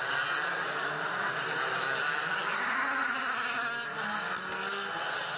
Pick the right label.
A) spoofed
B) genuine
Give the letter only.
B